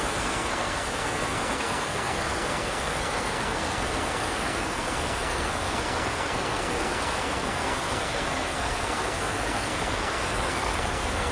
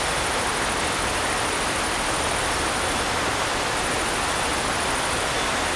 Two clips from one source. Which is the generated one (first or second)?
first